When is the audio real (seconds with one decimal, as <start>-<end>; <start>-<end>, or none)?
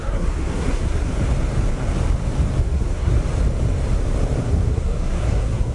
1.1-2.6; 3.2-4.4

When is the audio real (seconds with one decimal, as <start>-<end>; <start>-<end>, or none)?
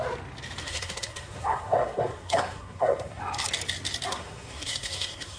0.0-0.6; 3.2-4.1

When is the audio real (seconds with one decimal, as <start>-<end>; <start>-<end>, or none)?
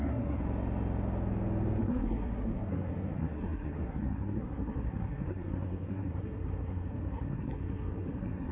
0.4-1.8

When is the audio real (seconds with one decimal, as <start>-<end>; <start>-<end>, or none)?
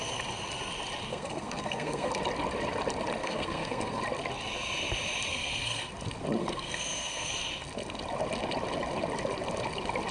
0.0-1.1; 2.1-3.2; 4.0-5.3; 5.9-6.4; 7.3-10.1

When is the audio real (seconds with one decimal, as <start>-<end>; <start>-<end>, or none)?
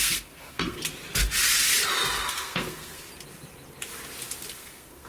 0.8-2.3; 3.1-4.5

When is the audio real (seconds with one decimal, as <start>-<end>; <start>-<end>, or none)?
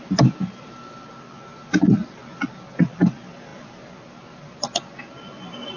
0.0-5.8